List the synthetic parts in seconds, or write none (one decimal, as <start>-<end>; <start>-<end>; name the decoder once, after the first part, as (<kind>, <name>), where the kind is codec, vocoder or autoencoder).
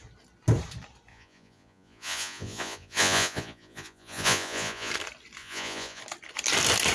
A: 1.1-4.9 (vocoder, Vocos); 5.4-6.0